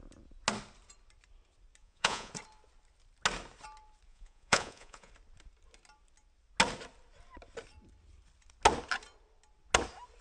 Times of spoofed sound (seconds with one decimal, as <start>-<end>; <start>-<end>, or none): 1.8-2.3; 4.1-5.1